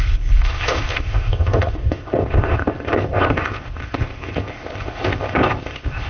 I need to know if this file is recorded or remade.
remade